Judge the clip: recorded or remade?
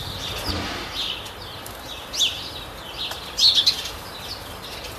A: recorded